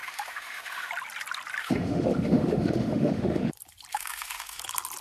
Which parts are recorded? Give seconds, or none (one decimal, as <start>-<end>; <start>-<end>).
0.9-1.6; 3.5-3.9; 4.6-5.0